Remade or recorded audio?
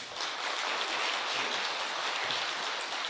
recorded